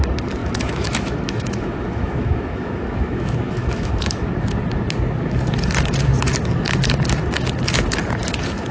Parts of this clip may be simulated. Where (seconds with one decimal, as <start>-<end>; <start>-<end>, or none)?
0.4-4.3